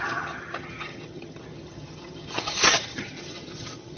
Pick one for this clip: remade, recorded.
remade